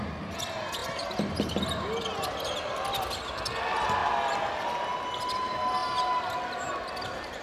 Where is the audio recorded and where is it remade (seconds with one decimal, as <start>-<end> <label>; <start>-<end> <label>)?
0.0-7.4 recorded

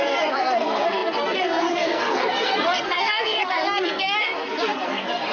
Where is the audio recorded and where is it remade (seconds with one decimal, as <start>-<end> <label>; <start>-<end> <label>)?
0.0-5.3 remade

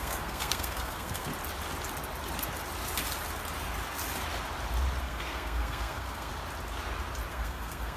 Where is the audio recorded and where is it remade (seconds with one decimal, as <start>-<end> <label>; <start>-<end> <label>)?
0.0-1.3 remade; 1.3-5.0 recorded; 5.0-6.3 remade; 6.3-7.3 recorded; 7.3-8.0 remade

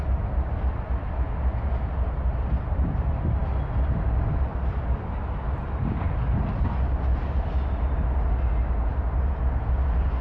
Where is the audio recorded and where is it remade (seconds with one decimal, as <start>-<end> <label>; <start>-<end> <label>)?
0.0-10.2 recorded

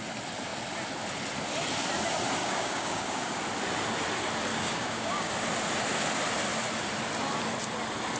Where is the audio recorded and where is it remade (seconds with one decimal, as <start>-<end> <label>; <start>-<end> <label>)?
0.0-2.4 recorded; 2.4-3.4 remade; 3.4-4.5 recorded; 4.5-5.3 remade; 5.3-8.2 recorded

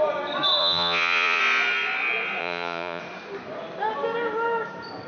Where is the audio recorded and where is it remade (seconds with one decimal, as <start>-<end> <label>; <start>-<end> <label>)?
0.0-0.6 recorded; 0.6-1.4 remade; 1.4-2.4 recorded; 2.4-3.0 remade; 3.0-5.1 recorded

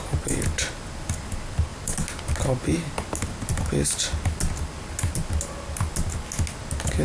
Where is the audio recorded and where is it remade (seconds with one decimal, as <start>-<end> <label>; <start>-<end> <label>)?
0.0-7.0 recorded